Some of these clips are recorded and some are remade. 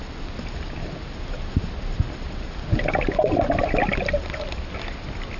recorded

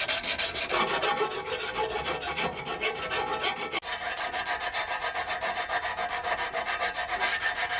recorded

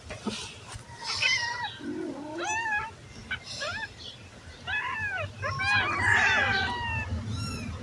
recorded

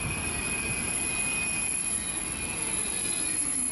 recorded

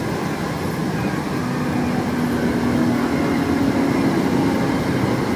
recorded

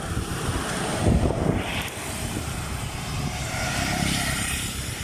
remade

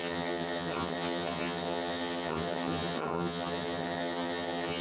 remade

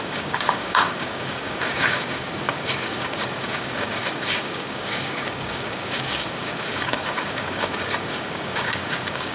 remade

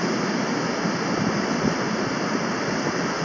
recorded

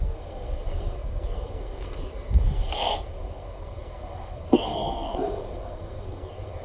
remade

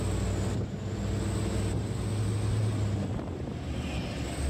recorded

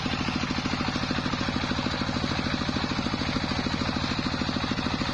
recorded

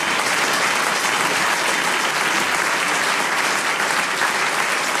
recorded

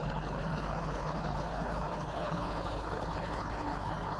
remade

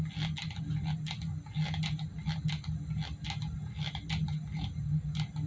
recorded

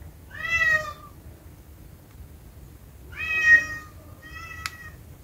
recorded